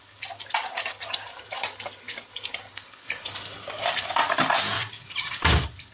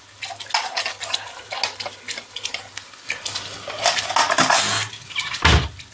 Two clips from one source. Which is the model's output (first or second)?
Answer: first